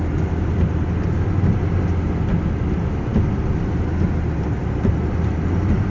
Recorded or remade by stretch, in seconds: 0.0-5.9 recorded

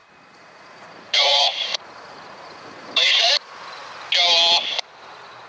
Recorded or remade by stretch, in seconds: 0.0-3.3 remade; 3.3-5.5 recorded

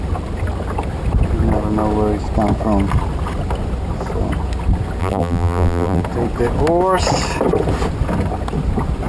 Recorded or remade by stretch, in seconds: 0.0-5.0 recorded; 5.0-6.0 remade; 6.0-9.1 recorded

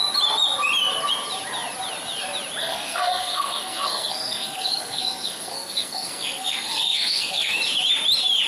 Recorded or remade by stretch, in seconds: 0.0-2.6 recorded; 2.6-7.6 remade; 7.6-8.5 recorded

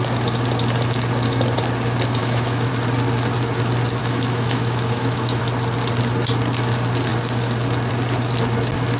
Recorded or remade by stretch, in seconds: 0.0-2.2 recorded; 2.2-2.7 remade; 2.7-4.0 recorded; 4.0-5.4 remade; 5.4-9.0 recorded

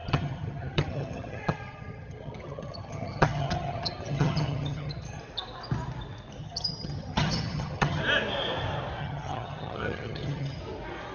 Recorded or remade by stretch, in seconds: 0.0-5.2 remade; 5.2-6.4 recorded; 6.4-8.0 remade; 8.0-9.0 recorded; 9.0-10.6 remade; 10.6-11.1 recorded